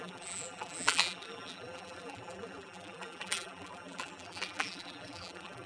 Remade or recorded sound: remade